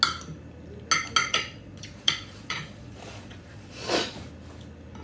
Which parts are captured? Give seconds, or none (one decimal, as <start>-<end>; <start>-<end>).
0.0-1.2; 4.2-5.0

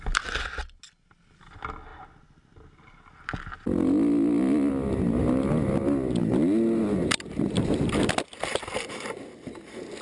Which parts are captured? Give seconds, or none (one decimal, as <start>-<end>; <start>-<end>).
0.0-10.0